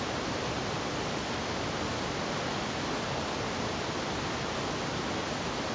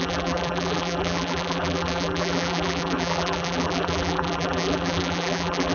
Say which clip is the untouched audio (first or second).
first